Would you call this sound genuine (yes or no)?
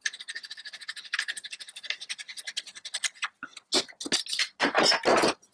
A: yes